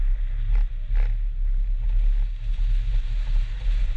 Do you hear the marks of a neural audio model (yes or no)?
no